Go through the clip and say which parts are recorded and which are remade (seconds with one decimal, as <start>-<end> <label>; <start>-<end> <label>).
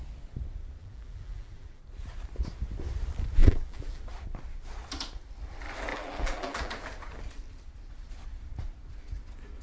0.0-0.8 recorded; 0.8-1.8 remade; 1.8-3.4 recorded; 3.4-4.0 remade; 4.0-5.9 recorded; 5.9-6.7 remade; 6.7-9.6 recorded